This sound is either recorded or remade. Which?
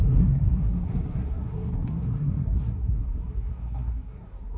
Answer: remade